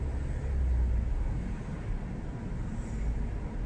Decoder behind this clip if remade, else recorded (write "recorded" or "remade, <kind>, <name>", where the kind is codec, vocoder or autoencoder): recorded